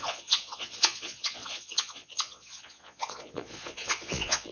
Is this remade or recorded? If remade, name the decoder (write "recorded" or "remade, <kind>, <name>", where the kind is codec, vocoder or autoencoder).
remade, vocoder, Vocos